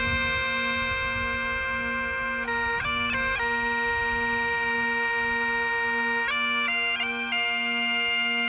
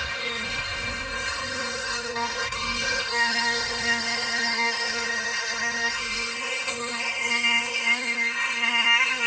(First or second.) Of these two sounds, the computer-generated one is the second